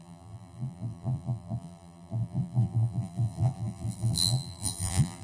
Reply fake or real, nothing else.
fake